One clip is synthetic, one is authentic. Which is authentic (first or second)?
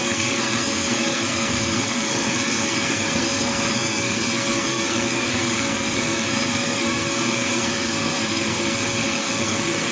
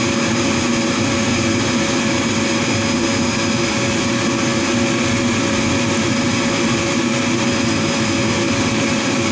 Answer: second